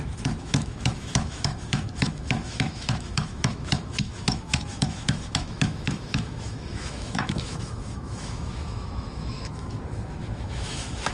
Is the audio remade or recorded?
remade